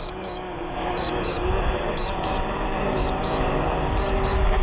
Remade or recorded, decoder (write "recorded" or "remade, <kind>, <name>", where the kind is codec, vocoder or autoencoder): remade, codec, DAC